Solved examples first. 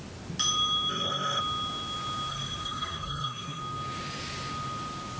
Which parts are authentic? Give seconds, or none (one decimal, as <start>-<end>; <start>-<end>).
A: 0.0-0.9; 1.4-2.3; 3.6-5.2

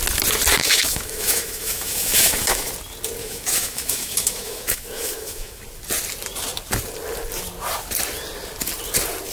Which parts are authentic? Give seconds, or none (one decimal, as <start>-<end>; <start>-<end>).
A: 0.0-0.6; 2.7-3.2; 5.6-9.3

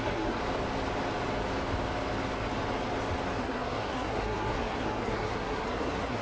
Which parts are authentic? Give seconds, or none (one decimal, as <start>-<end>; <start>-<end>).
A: 0.4-3.4